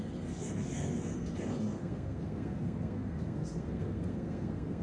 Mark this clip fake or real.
fake